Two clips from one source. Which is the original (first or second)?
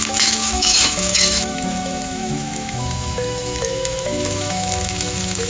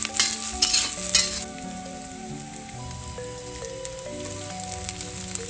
second